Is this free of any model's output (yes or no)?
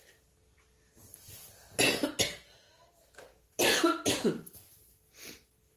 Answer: yes